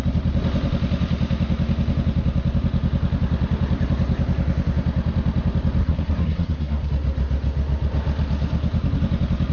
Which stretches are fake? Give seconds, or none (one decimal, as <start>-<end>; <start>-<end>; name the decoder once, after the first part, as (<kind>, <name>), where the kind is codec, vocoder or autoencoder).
5.8-6.9 (codec, SNAC)